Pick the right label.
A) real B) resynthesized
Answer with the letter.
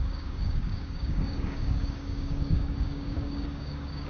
B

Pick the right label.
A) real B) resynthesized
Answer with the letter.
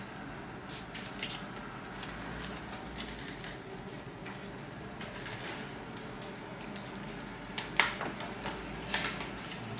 A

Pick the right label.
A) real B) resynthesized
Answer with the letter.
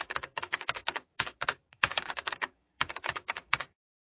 B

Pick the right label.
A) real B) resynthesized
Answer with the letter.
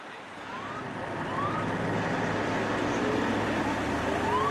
A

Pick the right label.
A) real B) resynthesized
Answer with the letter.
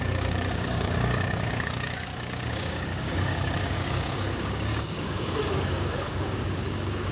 B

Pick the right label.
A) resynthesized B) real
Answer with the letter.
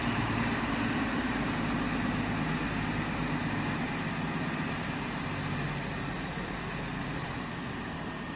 B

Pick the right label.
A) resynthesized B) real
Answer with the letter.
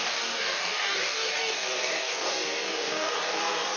A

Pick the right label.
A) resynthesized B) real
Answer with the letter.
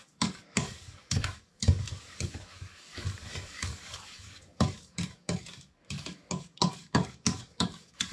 A